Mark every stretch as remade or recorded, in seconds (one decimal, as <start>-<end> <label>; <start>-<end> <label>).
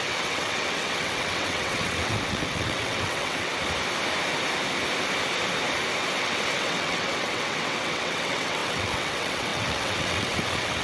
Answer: 0.0-3.5 remade; 3.5-6.2 recorded; 6.2-10.8 remade